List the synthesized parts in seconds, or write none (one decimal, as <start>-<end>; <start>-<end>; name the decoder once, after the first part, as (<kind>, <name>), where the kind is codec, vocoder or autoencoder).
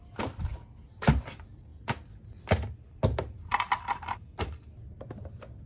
none